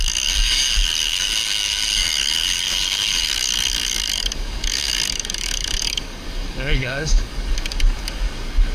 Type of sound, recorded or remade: remade